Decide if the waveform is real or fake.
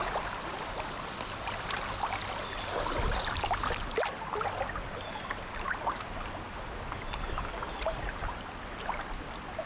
real